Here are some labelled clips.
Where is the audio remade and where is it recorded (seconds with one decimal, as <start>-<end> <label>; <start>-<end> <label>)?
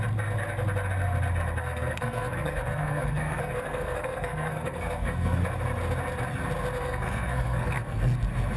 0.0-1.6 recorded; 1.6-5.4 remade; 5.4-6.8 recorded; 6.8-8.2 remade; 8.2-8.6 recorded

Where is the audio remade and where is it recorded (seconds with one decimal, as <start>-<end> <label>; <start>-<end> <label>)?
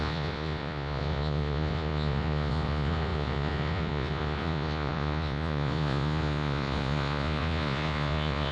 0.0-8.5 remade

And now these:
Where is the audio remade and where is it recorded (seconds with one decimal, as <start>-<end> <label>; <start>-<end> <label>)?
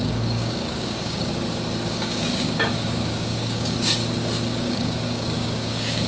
0.0-1.3 remade; 1.3-1.9 recorded; 1.9-4.0 remade; 4.0-4.6 recorded; 4.6-6.1 remade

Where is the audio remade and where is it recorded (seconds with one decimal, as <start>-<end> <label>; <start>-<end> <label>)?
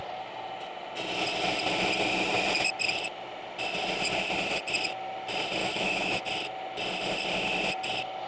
0.0-5.6 recorded; 5.6-6.2 remade; 6.2-8.3 recorded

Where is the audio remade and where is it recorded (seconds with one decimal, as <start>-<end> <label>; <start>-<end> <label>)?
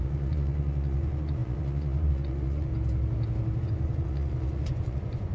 0.0-2.7 remade; 2.7-3.6 recorded; 3.6-5.3 remade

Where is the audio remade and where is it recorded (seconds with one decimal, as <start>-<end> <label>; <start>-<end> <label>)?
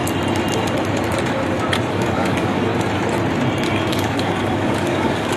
0.0-1.9 recorded; 1.9-2.7 remade; 2.7-3.9 recorded; 3.9-5.4 remade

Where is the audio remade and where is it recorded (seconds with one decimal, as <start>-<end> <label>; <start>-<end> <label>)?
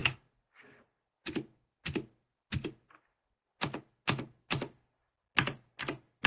0.0-6.3 recorded